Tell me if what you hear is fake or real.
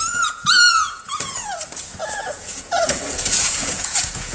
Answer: fake